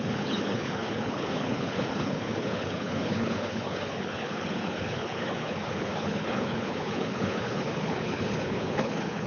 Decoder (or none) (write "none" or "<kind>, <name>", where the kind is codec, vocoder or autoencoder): codec, HILCodec